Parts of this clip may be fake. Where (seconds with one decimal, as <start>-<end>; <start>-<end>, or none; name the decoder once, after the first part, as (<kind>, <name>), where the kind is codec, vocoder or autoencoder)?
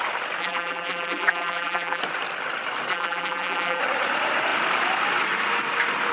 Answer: 0.4-2.0 (vocoder, BigVGAN v2); 2.9-3.8